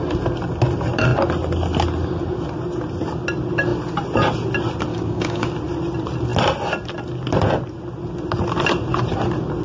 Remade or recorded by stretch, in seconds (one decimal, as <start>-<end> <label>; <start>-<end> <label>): 0.0-4.9 recorded; 4.9-5.5 remade; 5.5-9.6 recorded